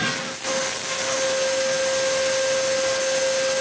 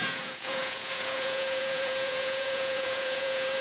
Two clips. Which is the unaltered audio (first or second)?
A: first